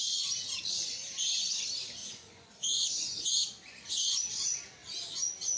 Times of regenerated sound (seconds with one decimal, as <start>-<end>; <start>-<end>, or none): 2.0-4.2